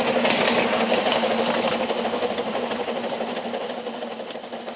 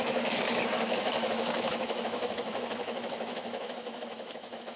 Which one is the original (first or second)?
first